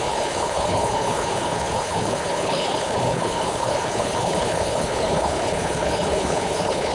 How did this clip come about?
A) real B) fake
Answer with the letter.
B